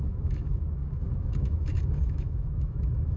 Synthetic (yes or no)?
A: yes